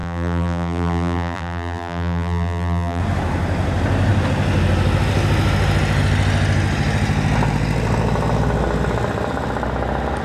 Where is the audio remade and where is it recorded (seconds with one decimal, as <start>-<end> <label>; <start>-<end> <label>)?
0.0-3.0 remade; 3.0-10.2 recorded